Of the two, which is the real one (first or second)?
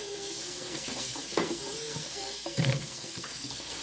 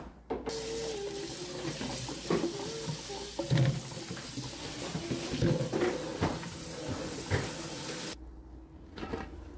second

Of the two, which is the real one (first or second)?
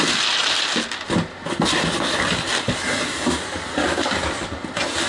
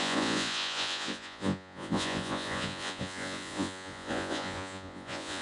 first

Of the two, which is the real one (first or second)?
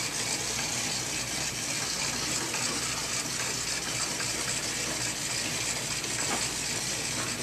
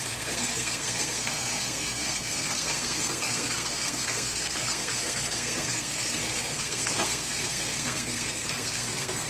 first